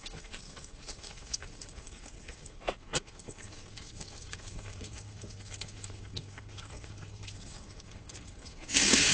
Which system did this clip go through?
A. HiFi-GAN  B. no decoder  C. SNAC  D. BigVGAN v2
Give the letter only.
C